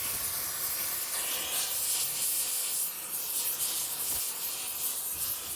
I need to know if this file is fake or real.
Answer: real